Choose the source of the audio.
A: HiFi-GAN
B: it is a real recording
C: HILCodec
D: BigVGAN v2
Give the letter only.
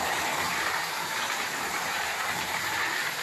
D